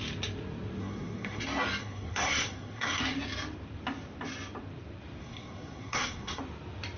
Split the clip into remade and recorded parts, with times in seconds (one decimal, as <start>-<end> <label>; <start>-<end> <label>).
0.0-0.8 recorded; 0.8-1.4 remade; 1.4-1.8 recorded; 1.8-3.0 remade; 3.0-5.2 recorded; 5.2-6.4 remade; 6.4-7.0 recorded